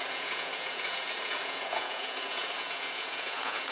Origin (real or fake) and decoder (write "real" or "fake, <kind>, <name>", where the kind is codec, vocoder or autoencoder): fake, vocoder, Vocos